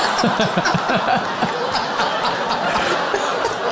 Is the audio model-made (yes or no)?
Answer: no